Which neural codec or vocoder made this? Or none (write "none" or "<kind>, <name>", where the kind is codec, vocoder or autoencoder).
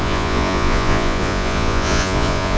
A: vocoder, Vocos